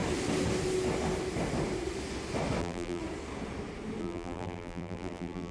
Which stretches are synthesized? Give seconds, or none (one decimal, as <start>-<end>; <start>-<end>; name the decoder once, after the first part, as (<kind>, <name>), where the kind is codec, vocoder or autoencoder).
2.6-3.0 (vocoder, BigVGAN v2); 4.0-5.5